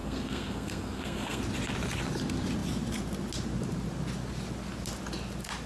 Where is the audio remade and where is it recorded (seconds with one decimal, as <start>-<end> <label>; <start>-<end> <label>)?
0.0-1.4 remade; 1.4-5.7 recorded